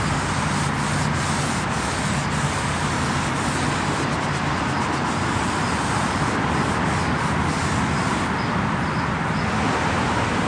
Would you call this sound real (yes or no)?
yes